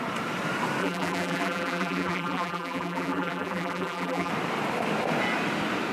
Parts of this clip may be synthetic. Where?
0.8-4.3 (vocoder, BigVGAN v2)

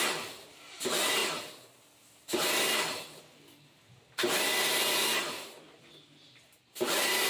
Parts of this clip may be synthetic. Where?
none

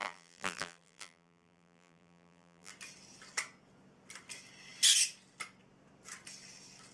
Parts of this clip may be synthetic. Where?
0.0-2.7 (vocoder, BigVGAN v2)

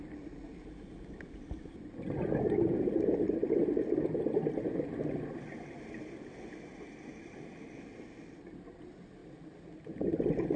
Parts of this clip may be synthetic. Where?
none

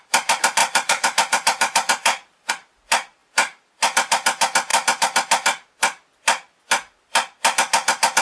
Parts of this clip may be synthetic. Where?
0.6-2.5 (vocoder, BigVGAN v2); 3.2-3.7

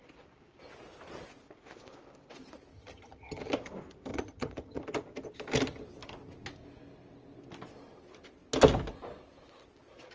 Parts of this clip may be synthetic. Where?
2.7-3.4 (vocoder, HiFi-GAN); 4.1-4.8

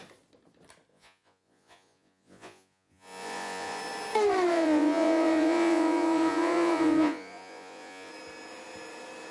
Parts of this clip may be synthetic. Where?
0.9-3.8 (vocoder, Vocos); 4.5-8.1

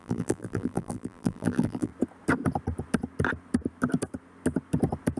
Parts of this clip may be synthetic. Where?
0.0-1.9 (vocoder, BigVGAN v2)